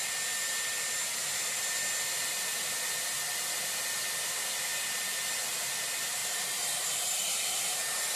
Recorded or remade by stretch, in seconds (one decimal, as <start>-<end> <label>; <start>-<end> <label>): 0.0-6.2 recorded; 6.2-8.2 remade